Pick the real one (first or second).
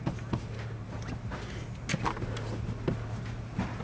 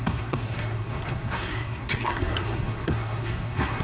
first